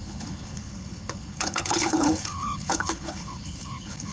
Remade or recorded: remade